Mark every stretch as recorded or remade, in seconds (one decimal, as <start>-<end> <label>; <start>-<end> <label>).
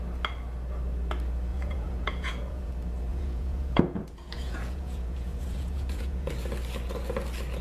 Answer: 0.0-1.5 recorded; 1.5-2.7 remade; 2.7-3.1 recorded; 3.1-6.3 remade; 6.3-7.6 recorded